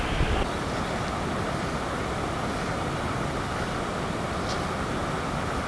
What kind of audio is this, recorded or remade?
recorded